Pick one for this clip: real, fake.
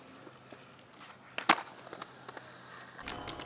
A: real